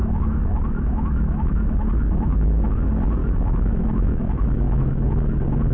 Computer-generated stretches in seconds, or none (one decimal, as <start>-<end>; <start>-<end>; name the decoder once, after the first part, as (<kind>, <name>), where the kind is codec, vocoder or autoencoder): 0.0-2.7 (autoencoder, DAC-VAE); 3.2-5.1